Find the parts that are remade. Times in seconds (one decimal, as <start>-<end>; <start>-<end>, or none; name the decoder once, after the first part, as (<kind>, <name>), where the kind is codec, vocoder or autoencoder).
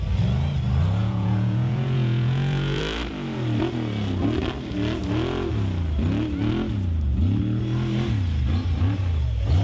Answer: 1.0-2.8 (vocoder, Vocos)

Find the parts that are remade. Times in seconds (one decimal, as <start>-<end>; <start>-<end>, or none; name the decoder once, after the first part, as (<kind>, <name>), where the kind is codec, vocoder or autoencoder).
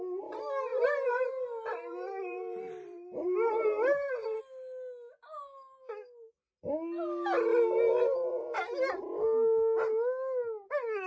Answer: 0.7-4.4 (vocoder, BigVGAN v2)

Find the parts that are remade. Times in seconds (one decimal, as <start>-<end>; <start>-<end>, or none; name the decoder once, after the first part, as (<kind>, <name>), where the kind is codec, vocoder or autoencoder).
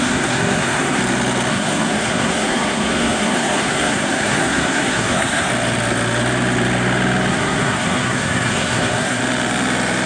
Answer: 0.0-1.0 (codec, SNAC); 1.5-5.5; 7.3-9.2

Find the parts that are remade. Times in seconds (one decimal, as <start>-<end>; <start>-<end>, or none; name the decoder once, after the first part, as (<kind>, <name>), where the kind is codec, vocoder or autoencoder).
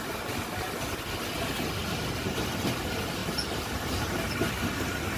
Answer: 1.8-2.4 (vocoder, BigVGAN v2); 3.2-4.5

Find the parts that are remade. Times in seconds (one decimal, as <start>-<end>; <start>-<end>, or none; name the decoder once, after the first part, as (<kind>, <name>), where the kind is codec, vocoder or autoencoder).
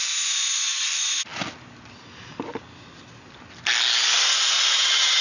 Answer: none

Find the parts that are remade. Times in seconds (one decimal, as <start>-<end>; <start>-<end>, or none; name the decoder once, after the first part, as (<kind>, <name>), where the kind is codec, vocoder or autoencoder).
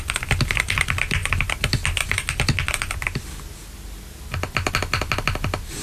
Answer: none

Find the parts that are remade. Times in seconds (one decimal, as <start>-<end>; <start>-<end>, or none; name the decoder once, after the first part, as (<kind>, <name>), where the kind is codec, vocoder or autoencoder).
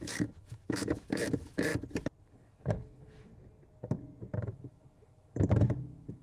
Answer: 0.0-1.7 (autoencoder, DAC-VAE); 2.2-3.3; 4.4-6.2